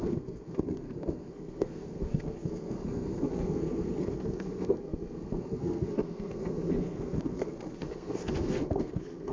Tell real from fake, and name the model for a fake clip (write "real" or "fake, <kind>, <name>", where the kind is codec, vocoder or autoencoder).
fake, codec, SNAC